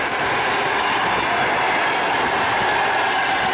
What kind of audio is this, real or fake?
real